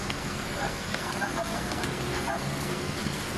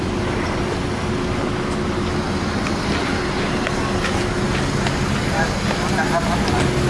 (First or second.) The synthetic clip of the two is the first